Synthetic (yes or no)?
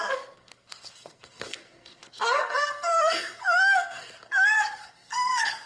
yes